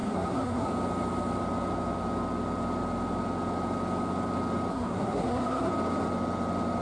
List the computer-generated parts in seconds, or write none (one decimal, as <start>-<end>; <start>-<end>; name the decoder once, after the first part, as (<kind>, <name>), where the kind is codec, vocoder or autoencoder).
0.0-0.7 (codec, SNAC); 4.7-5.7